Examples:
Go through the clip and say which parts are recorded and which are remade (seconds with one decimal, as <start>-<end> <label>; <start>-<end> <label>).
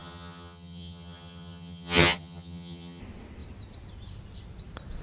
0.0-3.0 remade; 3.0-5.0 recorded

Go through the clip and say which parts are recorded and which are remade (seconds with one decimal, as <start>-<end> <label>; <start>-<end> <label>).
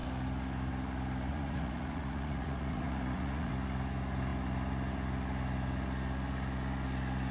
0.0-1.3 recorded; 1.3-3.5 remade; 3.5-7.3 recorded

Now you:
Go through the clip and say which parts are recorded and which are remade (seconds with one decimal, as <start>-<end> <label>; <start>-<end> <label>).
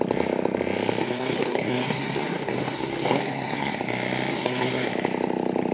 0.0-1.0 recorded; 1.0-3.8 remade; 3.8-4.3 recorded; 4.3-4.9 remade; 4.9-5.7 recorded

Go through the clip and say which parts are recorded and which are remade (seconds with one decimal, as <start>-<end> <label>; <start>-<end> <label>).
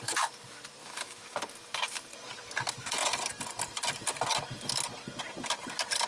0.0-0.8 recorded; 0.8-1.4 remade; 1.4-6.1 recorded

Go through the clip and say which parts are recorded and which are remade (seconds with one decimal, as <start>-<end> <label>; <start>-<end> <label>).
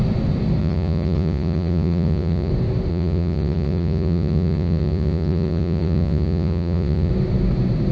0.0-0.6 recorded; 0.6-2.5 remade; 2.5-2.9 recorded; 2.9-7.1 remade; 7.1-7.9 recorded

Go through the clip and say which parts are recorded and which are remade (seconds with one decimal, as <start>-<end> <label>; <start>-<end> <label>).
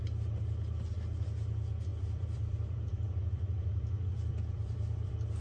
0.0-1.9 recorded; 1.9-5.4 remade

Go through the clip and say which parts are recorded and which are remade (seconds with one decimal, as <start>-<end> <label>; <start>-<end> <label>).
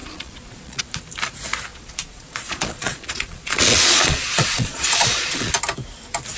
0.0-0.8 remade; 0.8-1.7 recorded; 1.7-5.5 remade; 5.5-6.4 recorded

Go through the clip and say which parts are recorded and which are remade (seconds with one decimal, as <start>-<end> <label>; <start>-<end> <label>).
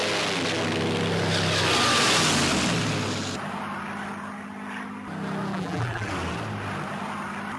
0.0-5.5 recorded; 5.5-6.1 remade; 6.1-7.6 recorded